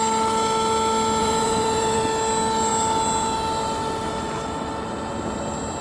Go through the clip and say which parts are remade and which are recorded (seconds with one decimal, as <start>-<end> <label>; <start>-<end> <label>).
0.0-1.2 recorded; 1.2-2.0 remade; 2.0-5.8 recorded